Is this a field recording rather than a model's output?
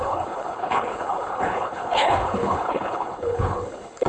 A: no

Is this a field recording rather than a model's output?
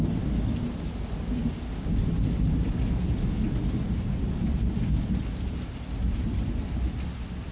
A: yes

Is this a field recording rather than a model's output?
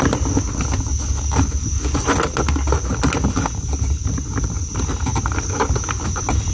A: yes